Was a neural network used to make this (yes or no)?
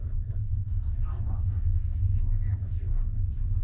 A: yes